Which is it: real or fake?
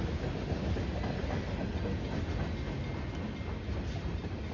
real